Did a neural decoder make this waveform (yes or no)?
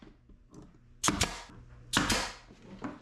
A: no